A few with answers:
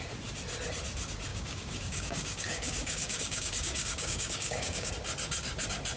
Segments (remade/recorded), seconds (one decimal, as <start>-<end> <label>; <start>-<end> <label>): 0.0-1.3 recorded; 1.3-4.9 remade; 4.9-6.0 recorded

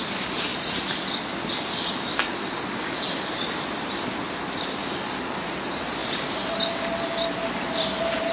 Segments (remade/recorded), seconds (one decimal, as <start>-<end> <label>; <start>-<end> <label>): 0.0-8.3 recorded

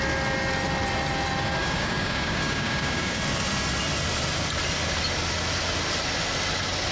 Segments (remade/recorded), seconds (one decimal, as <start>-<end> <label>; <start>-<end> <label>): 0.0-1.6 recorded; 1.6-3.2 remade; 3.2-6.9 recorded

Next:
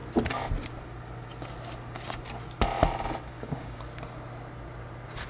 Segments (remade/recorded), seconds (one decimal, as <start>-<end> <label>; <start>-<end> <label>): 0.0-3.3 recorded; 3.3-3.8 remade; 3.8-5.3 recorded

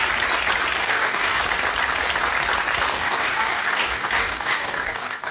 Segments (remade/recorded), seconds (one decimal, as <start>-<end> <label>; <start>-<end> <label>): 0.0-0.8 recorded; 0.8-1.4 remade; 1.4-2.9 recorded; 2.9-5.3 remade